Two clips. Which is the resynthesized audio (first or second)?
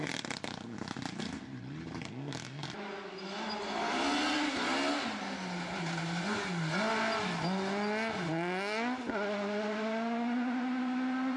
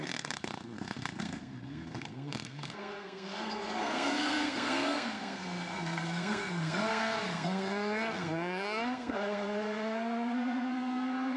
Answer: second